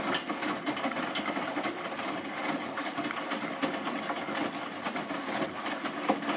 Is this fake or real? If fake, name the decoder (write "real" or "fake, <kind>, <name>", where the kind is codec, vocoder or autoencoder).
real